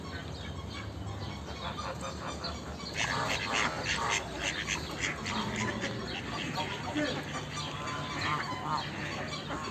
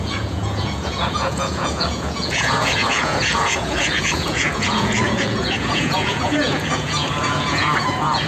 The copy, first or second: second